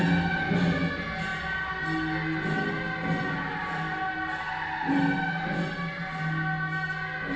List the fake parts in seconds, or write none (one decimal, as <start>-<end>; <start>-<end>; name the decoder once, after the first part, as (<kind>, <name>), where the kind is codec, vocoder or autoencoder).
none